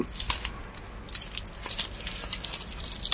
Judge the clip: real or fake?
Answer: real